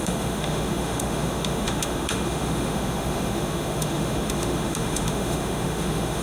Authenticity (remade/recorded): remade